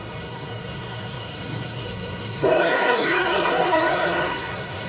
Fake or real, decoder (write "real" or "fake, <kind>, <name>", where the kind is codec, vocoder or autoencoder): fake, codec, SNAC